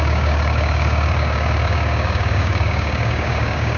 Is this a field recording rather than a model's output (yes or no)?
no